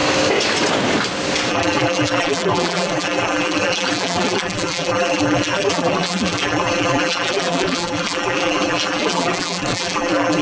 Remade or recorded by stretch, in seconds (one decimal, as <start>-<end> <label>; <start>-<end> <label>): 0.0-1.5 recorded; 1.5-10.4 remade